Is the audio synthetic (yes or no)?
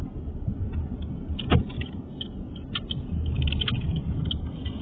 no